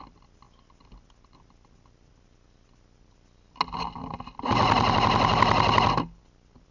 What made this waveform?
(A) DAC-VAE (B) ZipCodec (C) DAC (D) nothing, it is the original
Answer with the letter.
D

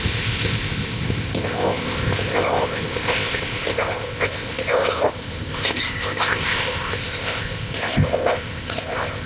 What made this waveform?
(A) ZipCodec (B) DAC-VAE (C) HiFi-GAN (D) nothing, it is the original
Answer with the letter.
A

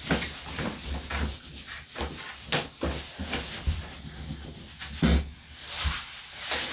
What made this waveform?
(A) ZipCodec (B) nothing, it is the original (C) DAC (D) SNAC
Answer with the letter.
B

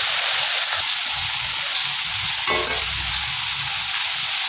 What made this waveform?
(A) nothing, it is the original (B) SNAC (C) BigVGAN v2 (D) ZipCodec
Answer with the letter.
A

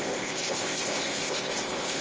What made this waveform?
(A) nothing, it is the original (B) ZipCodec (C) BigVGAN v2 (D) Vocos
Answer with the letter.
B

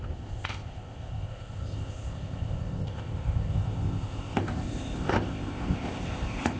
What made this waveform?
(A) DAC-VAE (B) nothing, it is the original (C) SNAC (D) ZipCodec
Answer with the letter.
D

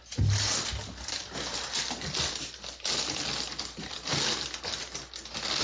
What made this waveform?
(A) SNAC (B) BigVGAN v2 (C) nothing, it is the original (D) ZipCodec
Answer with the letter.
C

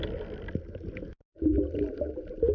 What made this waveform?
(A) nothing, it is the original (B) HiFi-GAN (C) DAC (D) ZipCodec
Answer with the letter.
A